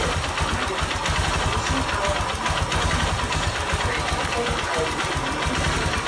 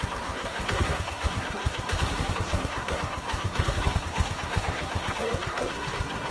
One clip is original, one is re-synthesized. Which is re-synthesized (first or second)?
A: second